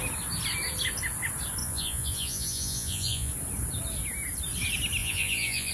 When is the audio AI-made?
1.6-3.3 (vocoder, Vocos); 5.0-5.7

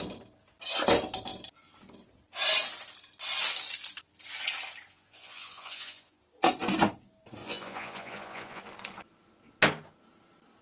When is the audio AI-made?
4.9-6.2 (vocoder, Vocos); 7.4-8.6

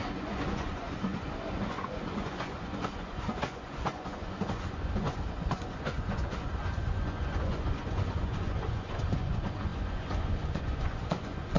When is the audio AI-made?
0.0-11.6 (vocoder, Vocos)